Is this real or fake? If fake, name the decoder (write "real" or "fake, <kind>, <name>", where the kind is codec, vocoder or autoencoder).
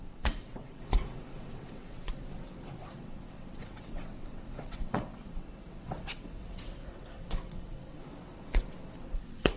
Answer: fake, vocoder, WaveNeXt